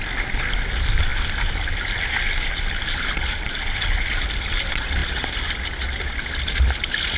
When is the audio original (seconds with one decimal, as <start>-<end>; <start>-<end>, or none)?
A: 0.0-7.2